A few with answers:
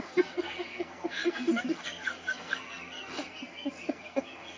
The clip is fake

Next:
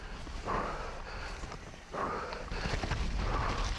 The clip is real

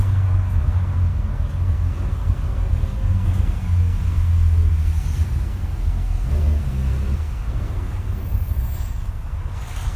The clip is fake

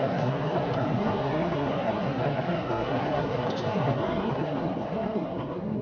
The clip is fake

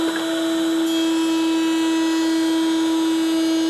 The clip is real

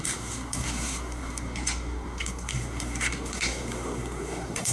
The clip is fake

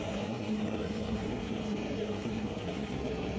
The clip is fake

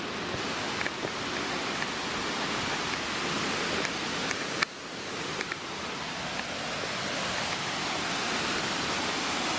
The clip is real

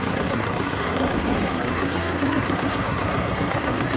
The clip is fake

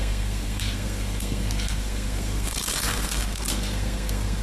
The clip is fake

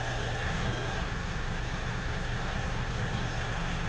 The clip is fake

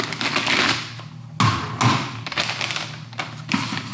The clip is real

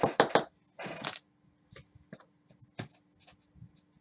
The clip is real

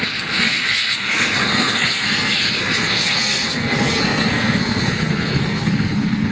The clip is fake